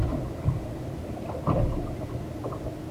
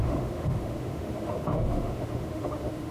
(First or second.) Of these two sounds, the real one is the first